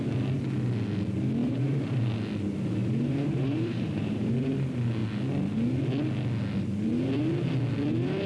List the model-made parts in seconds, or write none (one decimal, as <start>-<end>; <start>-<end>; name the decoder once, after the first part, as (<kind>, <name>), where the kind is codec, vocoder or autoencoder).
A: 1.4-2.0 (vocoder, BigVGAN v2); 2.8-4.3